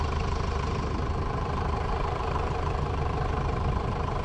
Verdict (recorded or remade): remade